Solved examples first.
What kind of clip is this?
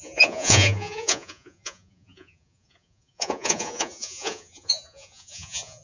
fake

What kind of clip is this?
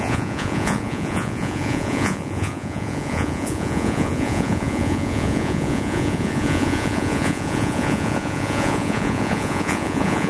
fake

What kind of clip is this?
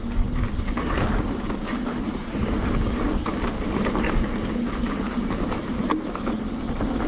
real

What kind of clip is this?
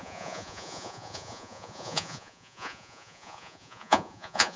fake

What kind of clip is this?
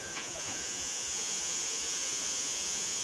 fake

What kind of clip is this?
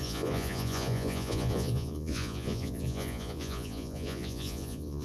fake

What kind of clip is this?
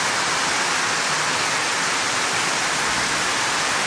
real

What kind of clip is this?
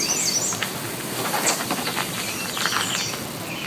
real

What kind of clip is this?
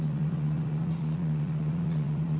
fake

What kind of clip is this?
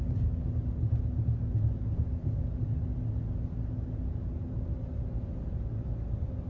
real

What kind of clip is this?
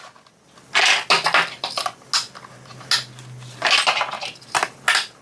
real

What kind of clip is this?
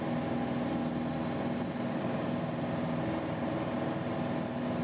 real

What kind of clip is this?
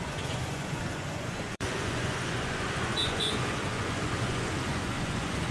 fake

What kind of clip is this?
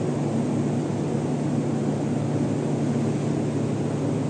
real